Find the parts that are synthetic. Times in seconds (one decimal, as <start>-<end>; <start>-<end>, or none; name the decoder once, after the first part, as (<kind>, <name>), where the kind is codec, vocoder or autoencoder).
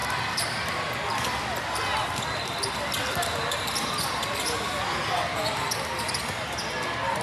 none